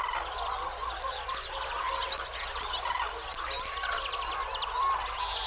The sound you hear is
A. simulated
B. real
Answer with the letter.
B